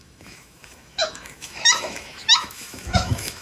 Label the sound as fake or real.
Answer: fake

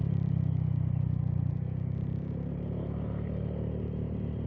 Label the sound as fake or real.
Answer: fake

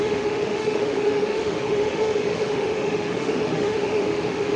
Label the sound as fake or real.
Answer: fake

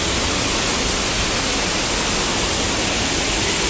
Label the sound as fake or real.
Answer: real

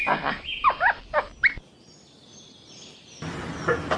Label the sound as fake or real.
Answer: real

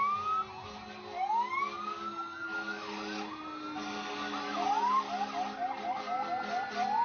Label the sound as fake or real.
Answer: real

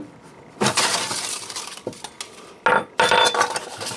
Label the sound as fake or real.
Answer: real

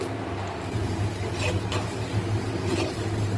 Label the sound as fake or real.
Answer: real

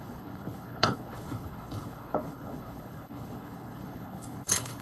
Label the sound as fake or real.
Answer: fake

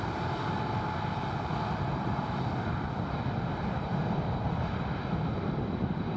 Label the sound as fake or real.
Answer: real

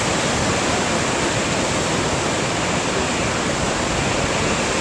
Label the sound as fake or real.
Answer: real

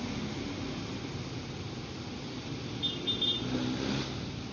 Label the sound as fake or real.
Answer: real